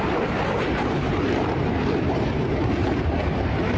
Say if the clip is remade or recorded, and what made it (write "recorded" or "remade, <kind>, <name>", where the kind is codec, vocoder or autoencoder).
remade, vocoder, BigVGAN v2